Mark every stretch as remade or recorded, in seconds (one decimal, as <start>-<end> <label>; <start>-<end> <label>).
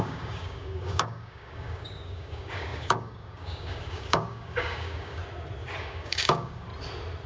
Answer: 0.0-5.2 remade; 5.2-5.8 recorded; 5.8-6.7 remade; 6.7-7.3 recorded